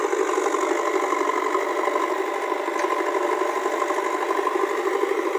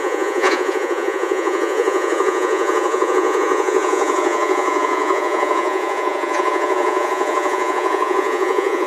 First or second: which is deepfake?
second